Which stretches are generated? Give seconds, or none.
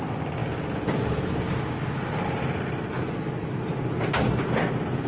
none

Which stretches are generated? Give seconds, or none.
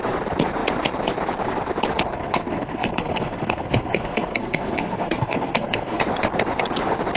2.1-6.0 (codec, SNAC)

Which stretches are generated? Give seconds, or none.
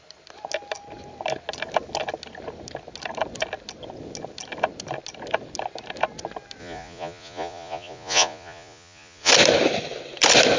6.6-9.3 (vocoder, Vocos)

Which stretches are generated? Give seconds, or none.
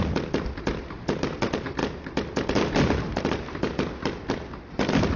none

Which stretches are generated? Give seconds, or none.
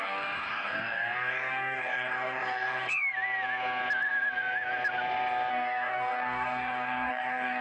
0.0-3.1 (codec, DAC); 5.5-7.6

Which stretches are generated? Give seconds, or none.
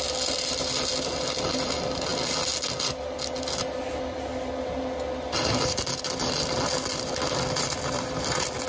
none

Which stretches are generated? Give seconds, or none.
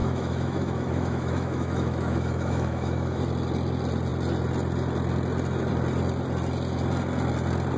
0.0-3.2 (autoencoder, DAC-VAE)